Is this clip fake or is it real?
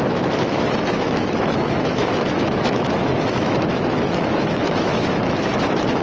fake